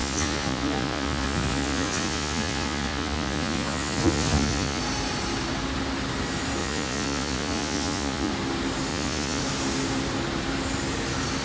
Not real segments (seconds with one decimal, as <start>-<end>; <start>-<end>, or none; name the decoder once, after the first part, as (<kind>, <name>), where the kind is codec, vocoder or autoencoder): 0.0-4.8 (vocoder, Vocos); 6.6-8.3; 8.9-9.4